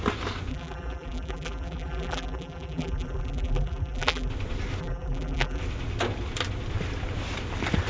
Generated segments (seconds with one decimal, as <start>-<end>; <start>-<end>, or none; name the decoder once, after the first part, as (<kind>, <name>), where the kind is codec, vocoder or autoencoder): 0.5-4.3 (vocoder, BigVGAN v2); 4.8-5.6